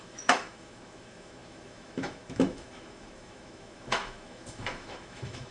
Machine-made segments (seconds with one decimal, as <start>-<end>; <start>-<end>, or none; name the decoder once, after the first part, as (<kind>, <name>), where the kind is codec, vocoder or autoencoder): 0.0-5.5 (autoencoder, DAC-VAE)